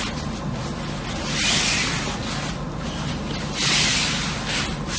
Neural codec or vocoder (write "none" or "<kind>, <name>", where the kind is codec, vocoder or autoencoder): none